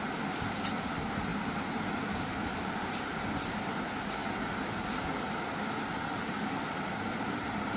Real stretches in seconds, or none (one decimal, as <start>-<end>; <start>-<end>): 0.0-7.8